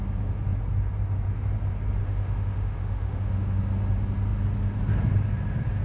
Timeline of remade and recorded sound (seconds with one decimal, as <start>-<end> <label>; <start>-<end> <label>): 0.0-2.0 recorded; 2.0-3.6 remade; 3.6-5.8 recorded